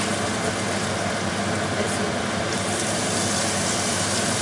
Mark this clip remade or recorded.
remade